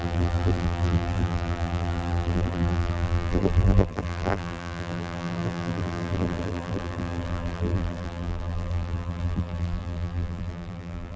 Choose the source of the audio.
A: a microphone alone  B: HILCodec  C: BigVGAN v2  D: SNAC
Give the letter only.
C